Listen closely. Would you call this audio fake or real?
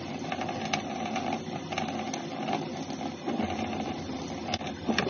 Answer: real